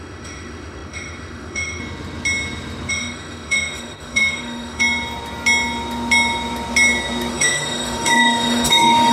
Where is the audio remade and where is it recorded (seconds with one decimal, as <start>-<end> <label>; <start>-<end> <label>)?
0.0-1.8 remade; 1.8-2.9 recorded; 2.9-4.8 remade; 4.8-7.3 recorded; 7.3-9.1 remade